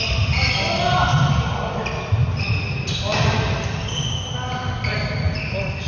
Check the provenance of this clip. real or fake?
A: real